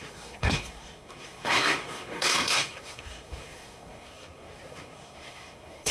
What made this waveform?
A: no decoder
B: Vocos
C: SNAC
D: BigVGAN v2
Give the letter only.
C